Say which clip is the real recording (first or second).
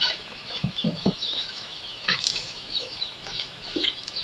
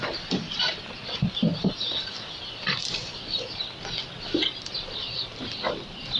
second